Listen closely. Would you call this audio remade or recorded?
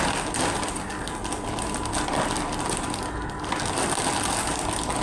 recorded